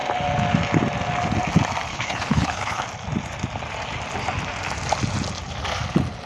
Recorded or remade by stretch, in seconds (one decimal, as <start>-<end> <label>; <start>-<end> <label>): 0.0-1.9 recorded; 1.9-2.8 remade; 2.8-6.3 recorded